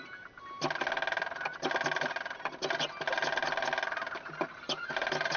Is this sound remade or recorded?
recorded